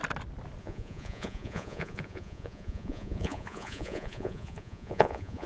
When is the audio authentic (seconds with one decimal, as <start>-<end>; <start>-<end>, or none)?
0.0-0.6